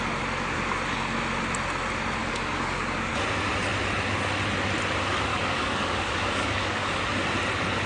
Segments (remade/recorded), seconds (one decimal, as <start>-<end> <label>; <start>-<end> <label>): 0.0-2.2 recorded; 2.2-3.1 remade; 3.1-5.3 recorded; 5.3-7.0 remade; 7.0-7.9 recorded